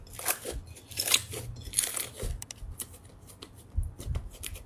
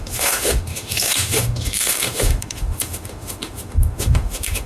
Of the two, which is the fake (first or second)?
second